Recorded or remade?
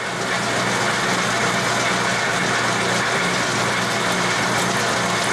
recorded